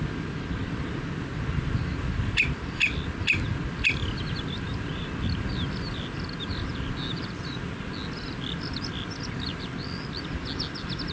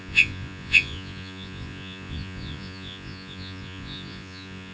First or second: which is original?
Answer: first